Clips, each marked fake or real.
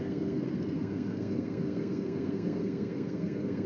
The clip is fake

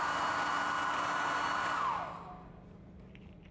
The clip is real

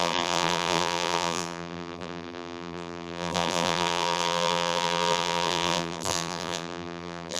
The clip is fake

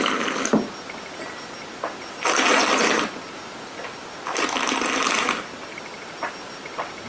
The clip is real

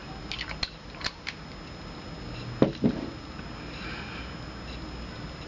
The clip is real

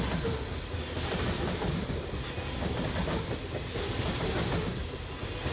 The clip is real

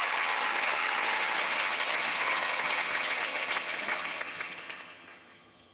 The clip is fake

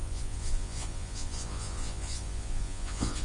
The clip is fake